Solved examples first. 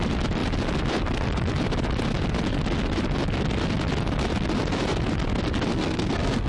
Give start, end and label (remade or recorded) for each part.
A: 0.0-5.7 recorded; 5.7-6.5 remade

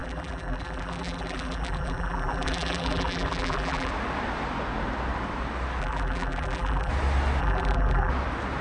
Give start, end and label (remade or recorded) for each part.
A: 0.0-3.9 remade; 3.9-5.8 recorded; 5.8-6.9 remade; 6.9-7.4 recorded; 7.4-8.1 remade; 8.1-8.6 recorded

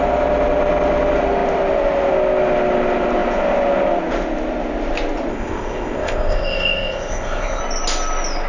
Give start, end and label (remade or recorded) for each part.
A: 0.0-5.3 recorded; 5.3-7.6 remade; 7.6-8.5 recorded